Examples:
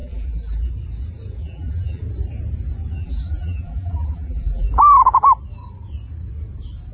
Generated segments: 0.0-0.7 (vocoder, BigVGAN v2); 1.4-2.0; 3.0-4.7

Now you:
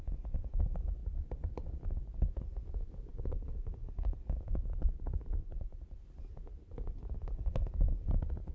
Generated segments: 3.1-5.7 (vocoder, BigVGAN v2)

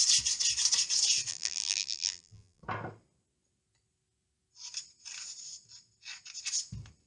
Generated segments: 1.3-2.6 (vocoder, BigVGAN v2)

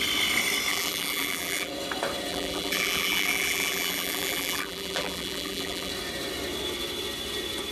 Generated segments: 0.7-1.7 (vocoder, BigVGAN v2); 2.3-5.9

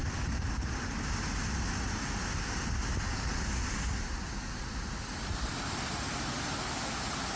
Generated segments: none

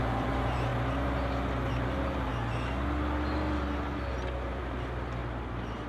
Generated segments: 0.0-0.7 (vocoder, BigVGAN v2); 1.7-2.3; 4.6-5.9

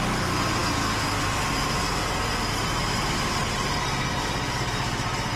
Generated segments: none

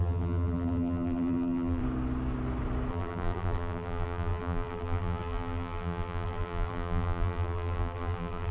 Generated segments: 0.0-1.8 (vocoder, BigVGAN v2); 2.9-8.5